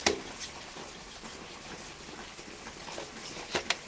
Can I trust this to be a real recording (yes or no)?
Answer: yes